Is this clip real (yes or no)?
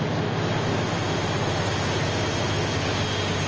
yes